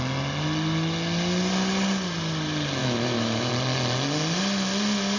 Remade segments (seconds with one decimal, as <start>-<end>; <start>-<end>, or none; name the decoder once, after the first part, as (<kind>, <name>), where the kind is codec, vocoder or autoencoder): 2.8-3.5 (autoencoder, DAC-VAE)